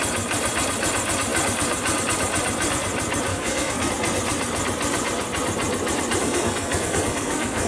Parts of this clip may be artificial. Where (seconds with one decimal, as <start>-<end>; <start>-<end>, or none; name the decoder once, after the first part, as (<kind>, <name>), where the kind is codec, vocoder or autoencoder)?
3.3-3.9 (codec, SNAC); 6.2-7.7